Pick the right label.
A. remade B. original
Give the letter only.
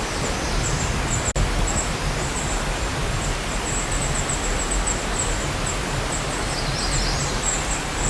B